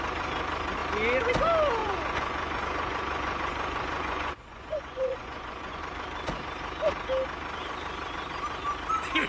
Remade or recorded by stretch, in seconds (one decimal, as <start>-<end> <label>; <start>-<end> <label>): 0.0-1.8 recorded; 1.8-5.8 remade; 5.8-9.3 recorded